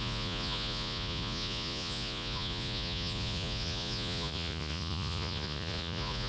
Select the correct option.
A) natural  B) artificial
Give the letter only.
B